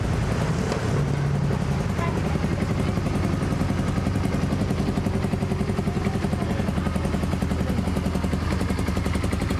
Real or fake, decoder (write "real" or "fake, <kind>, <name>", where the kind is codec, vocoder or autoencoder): real